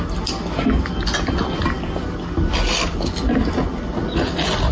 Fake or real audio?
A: real